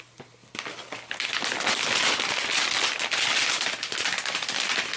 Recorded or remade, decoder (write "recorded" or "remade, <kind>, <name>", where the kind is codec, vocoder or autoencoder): recorded